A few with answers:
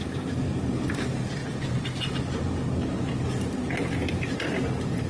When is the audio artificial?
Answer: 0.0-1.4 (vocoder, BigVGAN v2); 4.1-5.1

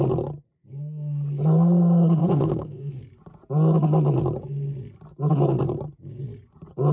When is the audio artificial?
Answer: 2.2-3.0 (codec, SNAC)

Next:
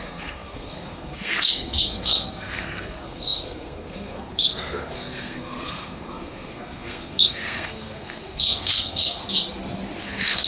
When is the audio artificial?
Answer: 0.0-9.2 (codec, SNAC); 10.0-10.5

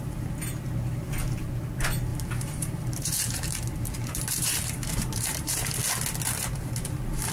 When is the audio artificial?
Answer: 2.1-5.8 (vocoder, BigVGAN v2)

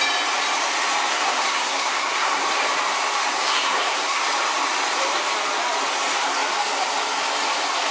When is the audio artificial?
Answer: 1.1-2.4 (codec, SNAC); 3.3-4.2